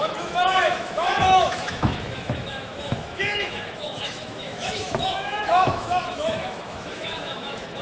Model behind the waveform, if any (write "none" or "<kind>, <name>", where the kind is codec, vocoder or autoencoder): autoencoder, DAC-VAE